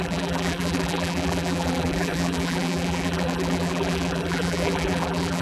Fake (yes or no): yes